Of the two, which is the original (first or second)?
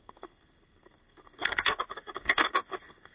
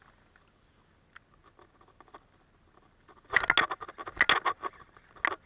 second